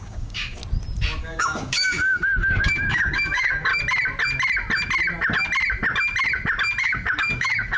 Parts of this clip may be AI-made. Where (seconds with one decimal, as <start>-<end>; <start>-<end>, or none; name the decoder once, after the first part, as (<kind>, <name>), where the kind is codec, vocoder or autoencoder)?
0.0-0.6 (codec, DAC); 1.2-3.7; 6.8-7.8